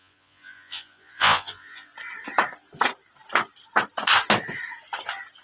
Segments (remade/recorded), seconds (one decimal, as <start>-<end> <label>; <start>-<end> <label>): 0.0-1.9 remade; 1.9-5.4 recorded

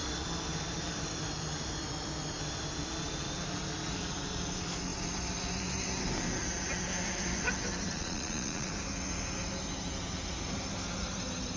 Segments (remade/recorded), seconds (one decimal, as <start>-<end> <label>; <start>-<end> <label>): 0.0-7.9 recorded; 7.9-8.7 remade; 8.7-11.6 recorded

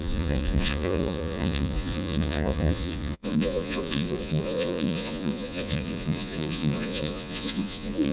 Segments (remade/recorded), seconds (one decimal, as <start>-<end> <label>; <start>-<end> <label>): 0.0-8.1 remade

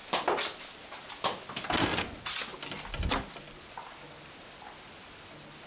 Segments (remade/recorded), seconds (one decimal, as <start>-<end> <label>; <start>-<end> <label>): 0.0-5.7 recorded

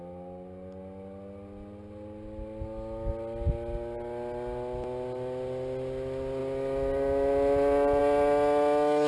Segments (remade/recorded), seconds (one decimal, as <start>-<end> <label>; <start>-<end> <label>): 0.0-9.1 recorded

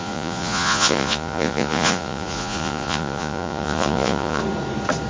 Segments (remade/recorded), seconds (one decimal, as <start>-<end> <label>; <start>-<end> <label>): 0.0-4.4 remade; 4.4-5.1 recorded

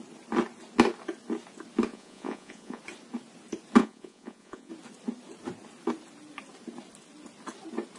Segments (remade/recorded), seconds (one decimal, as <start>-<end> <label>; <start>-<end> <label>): 0.0-1.9 recorded; 1.9-2.8 remade; 2.8-3.8 recorded; 3.8-4.7 remade; 4.7-8.0 recorded